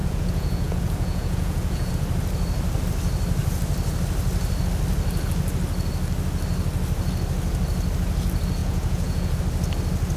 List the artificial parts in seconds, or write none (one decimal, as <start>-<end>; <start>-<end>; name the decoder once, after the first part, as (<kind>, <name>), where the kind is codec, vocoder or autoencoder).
0.0-1.9 (vocoder, Vocos); 8.6-9.4